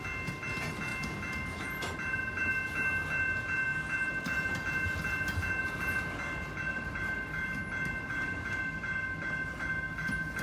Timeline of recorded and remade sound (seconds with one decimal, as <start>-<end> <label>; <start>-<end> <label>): 0.0-10.4 recorded